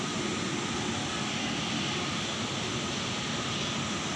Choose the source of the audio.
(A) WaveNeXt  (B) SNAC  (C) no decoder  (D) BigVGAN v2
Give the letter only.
C